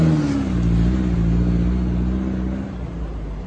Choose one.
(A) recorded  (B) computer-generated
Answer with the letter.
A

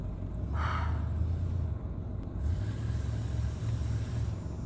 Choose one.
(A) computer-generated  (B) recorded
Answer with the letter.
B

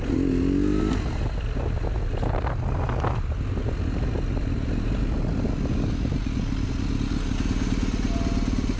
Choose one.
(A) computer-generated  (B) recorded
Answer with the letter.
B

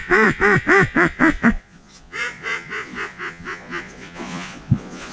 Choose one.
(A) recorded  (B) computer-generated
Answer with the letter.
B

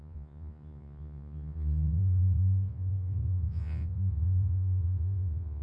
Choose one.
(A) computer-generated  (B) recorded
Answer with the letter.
A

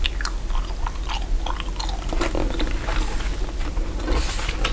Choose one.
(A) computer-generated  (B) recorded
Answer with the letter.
B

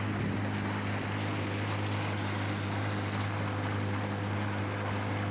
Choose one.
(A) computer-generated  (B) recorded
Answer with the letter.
B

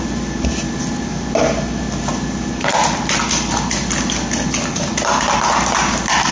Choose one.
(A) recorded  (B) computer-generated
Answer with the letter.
A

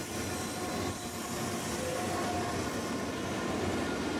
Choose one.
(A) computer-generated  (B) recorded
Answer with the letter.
B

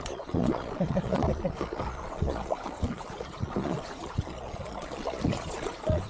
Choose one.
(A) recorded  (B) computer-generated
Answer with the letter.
B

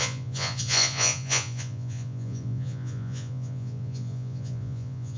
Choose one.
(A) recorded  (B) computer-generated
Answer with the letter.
B